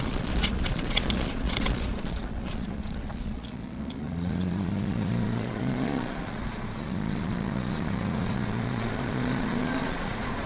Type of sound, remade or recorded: remade